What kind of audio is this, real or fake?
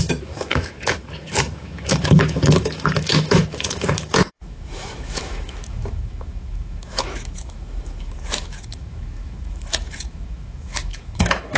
fake